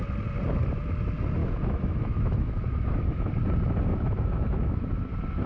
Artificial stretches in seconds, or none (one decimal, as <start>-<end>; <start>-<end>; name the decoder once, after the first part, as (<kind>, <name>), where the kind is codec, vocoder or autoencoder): 1.4-3.3 (autoencoder, DAC-VAE); 3.9-4.9